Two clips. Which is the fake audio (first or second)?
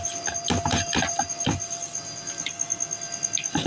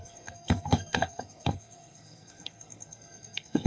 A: second